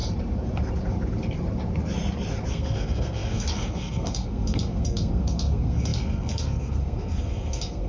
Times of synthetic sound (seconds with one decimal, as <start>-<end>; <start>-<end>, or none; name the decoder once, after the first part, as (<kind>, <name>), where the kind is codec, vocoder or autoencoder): 2.5-7.9 (codec, SNAC)